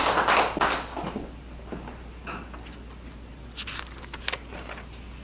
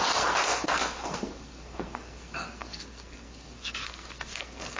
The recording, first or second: first